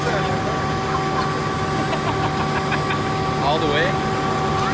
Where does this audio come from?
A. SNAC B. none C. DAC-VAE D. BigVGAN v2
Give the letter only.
B